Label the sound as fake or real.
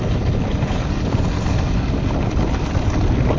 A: real